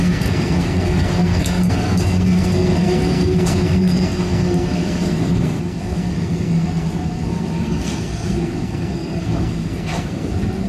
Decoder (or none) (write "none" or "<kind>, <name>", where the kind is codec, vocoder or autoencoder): codec, SNAC